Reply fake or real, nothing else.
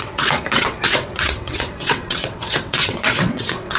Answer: fake